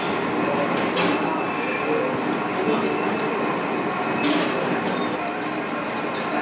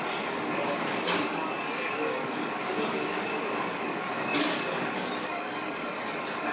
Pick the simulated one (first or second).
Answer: second